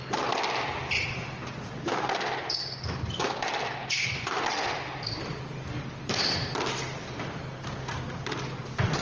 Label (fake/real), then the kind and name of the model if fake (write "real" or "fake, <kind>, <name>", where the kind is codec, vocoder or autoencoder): real